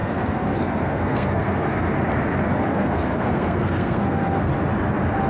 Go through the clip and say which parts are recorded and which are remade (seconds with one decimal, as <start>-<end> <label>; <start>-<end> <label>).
0.0-1.9 remade; 1.9-2.7 recorded; 2.7-4.5 remade; 4.5-5.3 recorded